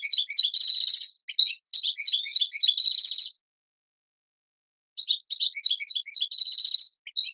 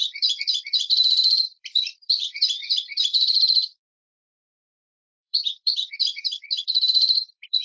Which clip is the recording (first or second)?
first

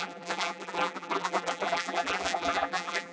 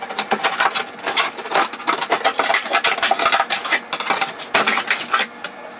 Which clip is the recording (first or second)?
second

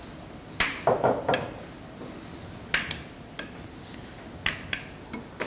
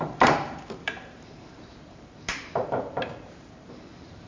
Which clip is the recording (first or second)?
first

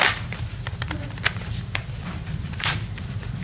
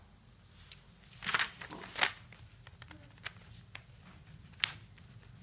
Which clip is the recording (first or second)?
second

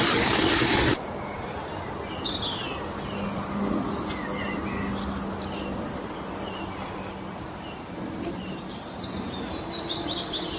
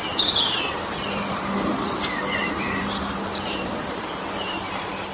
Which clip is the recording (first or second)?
first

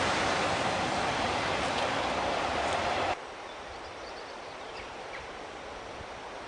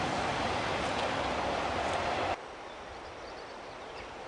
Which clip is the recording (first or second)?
second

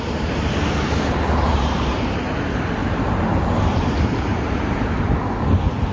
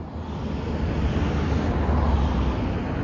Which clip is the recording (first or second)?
second